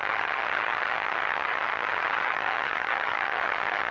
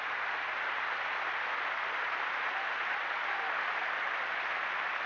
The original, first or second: second